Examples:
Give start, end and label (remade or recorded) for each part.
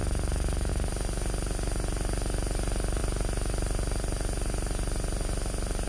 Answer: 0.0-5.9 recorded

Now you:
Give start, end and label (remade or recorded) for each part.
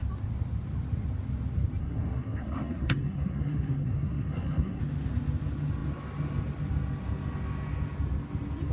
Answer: 0.0-1.8 recorded; 1.8-4.8 remade; 4.8-8.7 recorded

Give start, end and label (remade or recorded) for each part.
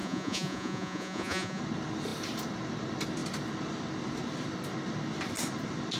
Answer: 0.0-1.6 remade; 1.6-6.0 recorded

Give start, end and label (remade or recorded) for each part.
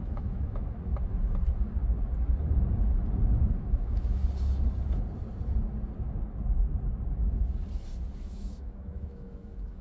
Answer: 0.0-0.9 remade; 0.9-3.7 recorded; 3.7-4.2 remade; 4.2-8.2 recorded; 8.2-9.8 remade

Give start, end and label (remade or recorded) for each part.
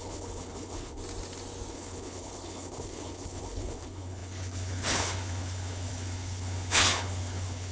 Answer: 0.0-1.0 remade; 1.0-1.7 recorded; 1.7-7.7 remade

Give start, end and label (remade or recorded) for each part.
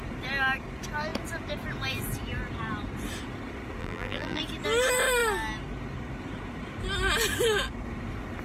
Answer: 0.0-3.8 recorded; 3.8-4.4 remade; 4.4-8.4 recorded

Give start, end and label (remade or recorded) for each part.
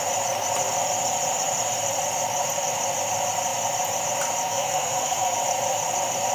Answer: 0.0-4.5 recorded; 4.5-5.4 remade; 5.4-6.3 recorded